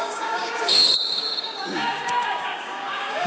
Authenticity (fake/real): fake